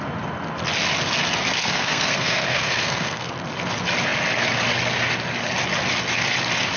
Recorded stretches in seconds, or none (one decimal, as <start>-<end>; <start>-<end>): 0.0-1.6; 3.3-6.8

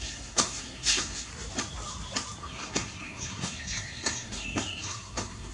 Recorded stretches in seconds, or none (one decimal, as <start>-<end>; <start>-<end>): 1.3-2.4

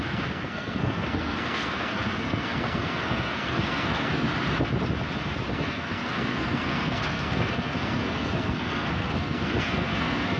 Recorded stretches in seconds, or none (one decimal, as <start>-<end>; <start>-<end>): 4.3-5.5